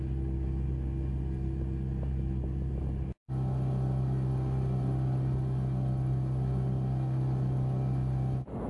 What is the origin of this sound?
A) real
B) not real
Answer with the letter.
A